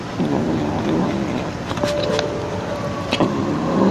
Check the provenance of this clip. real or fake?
real